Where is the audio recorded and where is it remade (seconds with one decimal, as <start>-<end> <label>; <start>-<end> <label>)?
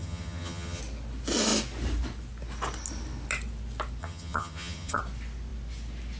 0.0-0.8 remade; 0.8-4.0 recorded; 4.0-5.0 remade; 5.0-6.2 recorded